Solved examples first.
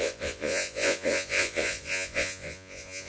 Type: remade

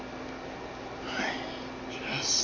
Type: recorded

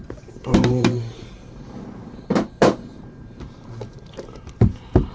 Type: remade